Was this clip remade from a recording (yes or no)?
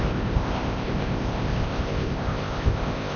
yes